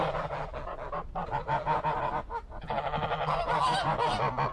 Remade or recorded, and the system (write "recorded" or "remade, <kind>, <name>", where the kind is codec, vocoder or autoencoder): recorded